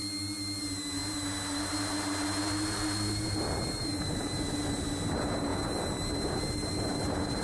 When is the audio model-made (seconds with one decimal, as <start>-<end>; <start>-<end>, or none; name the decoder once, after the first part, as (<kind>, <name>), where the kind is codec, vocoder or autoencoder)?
0.6-5.5 (vocoder, BigVGAN v2); 6.0-7.4